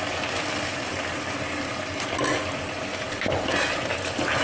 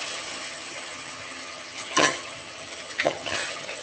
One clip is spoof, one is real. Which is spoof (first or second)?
second